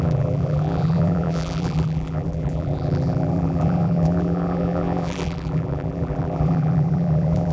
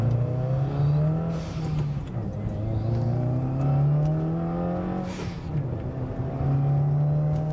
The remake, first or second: first